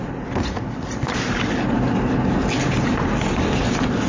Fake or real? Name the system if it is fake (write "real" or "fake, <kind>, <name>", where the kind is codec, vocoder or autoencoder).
real